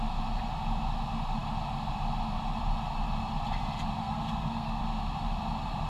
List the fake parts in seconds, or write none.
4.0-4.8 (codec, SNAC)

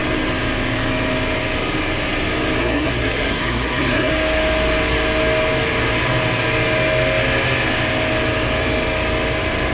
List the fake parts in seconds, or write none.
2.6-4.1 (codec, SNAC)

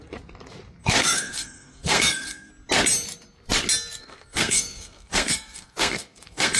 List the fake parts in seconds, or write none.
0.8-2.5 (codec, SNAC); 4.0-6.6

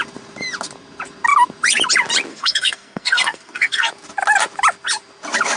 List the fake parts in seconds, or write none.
2.3-3.9 (codec, SNAC)

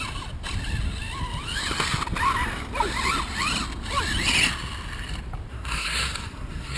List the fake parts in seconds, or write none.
5.5-6.8 (codec, SNAC)

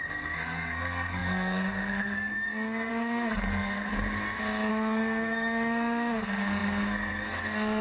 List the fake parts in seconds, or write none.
0.0-3.9 (codec, SNAC); 4.7-7.8